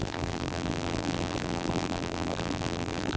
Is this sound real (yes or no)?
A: no